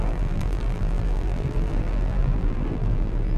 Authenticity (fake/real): fake